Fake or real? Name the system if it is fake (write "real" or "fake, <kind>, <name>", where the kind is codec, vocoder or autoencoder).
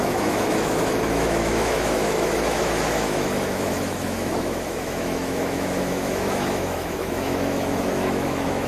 fake, autoencoder, DAC-VAE